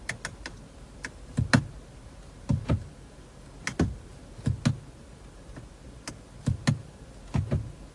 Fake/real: real